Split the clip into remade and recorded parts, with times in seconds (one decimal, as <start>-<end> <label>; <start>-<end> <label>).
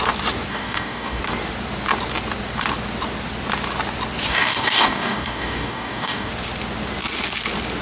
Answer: 0.0-0.5 recorded; 0.5-1.2 remade; 1.2-4.3 recorded; 4.3-6.3 remade; 6.3-7.8 recorded